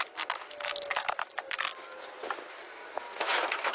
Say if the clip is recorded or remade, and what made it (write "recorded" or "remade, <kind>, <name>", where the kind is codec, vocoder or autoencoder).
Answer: recorded